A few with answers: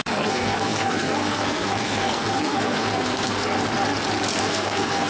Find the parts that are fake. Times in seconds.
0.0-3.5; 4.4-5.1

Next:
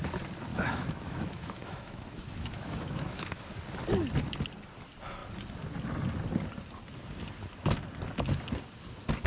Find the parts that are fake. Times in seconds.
0.5-3.5

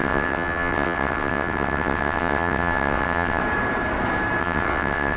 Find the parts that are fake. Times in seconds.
0.0-3.4; 4.4-5.2

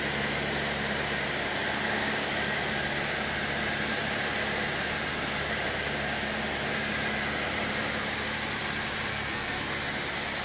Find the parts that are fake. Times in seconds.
9.1-9.7

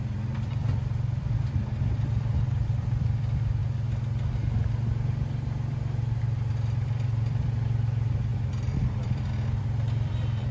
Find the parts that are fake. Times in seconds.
0.0-3.6; 6.2-10.5

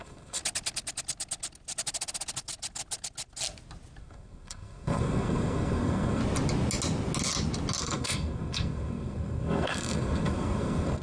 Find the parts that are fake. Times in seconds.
0.0-0.4; 4.0-6.2; 7.8-11.0

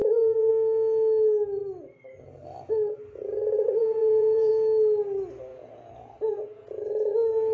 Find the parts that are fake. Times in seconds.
0.0-0.5; 3.8-4.5; 5.5-7.1

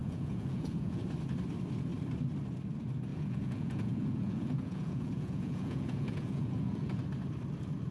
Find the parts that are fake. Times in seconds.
0.0-1.0; 3.1-7.0